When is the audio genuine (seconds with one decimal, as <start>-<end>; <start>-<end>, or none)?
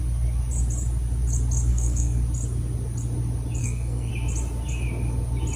0.0-1.7; 2.2-3.6; 4.1-5.6